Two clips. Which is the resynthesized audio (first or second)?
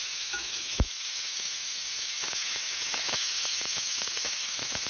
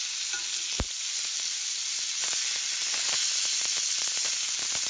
first